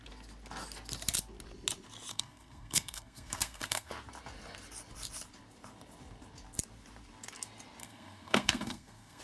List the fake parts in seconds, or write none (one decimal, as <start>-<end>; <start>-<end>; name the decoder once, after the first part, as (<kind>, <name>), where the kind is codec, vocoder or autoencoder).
2.1-3.9 (codec, SNAC); 7.8-9.2